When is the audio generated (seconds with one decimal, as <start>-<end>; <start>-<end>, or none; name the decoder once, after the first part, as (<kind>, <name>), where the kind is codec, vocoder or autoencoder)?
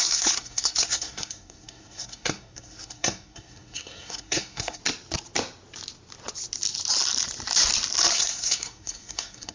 0.0-4.8 (codec, SNAC); 8.1-9.5